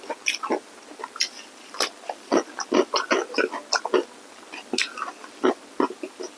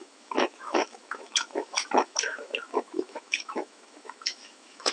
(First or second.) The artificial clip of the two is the second